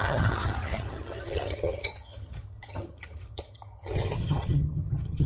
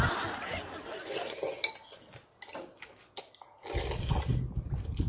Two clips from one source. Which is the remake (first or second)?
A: first